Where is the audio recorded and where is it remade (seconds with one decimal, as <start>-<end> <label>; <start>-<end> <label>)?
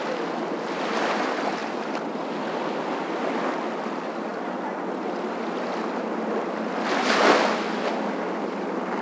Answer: 0.0-9.0 recorded